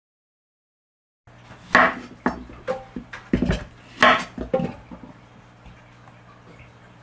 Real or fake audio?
real